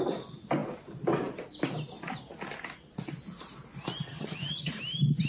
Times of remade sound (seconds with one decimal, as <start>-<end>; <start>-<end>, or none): 4.1-4.7